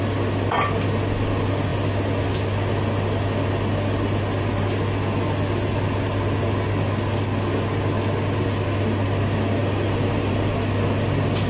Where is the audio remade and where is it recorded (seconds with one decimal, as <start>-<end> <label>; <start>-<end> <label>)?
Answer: 0.0-11.5 recorded